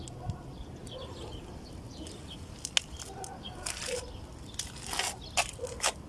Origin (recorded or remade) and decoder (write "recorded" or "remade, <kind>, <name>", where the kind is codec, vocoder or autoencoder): recorded